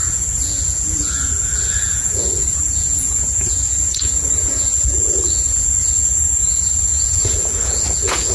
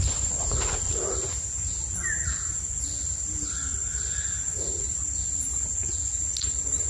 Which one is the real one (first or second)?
second